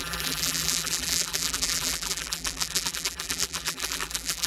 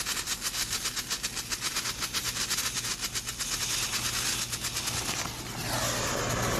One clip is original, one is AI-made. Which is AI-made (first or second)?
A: first